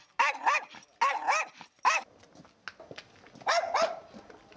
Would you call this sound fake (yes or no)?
no